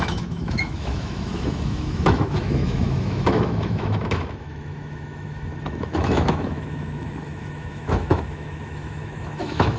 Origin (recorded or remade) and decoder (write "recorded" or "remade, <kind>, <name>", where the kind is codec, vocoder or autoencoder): remade, autoencoder, DAC-VAE